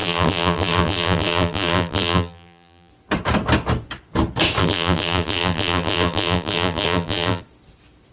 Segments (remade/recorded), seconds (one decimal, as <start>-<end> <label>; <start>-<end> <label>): 0.0-2.9 remade; 2.9-4.6 recorded; 4.6-7.4 remade; 7.4-8.1 recorded